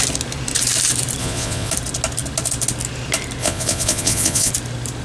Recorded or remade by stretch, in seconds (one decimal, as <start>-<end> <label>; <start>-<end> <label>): 0.0-1.2 recorded; 1.2-1.7 remade; 1.7-3.4 recorded; 3.4-4.5 remade; 4.5-5.0 recorded